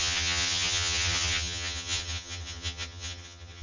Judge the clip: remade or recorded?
remade